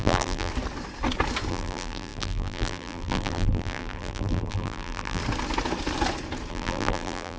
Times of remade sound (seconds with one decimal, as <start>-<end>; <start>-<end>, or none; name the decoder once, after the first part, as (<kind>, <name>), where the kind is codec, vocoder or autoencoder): 0.0-0.5 (vocoder, BigVGAN v2); 1.5-5.2; 6.5-7.4